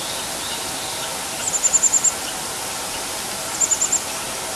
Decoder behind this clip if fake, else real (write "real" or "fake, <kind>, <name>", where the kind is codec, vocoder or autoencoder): real